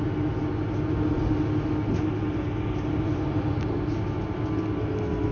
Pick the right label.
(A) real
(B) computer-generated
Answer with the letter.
A